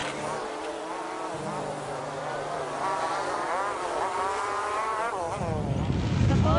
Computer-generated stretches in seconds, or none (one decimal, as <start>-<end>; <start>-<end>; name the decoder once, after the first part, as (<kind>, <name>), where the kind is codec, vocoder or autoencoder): 0.0-6.6 (vocoder, BigVGAN v2)